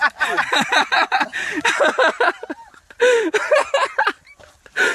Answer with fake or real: fake